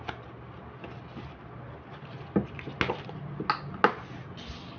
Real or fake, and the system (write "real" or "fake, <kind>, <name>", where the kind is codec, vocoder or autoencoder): real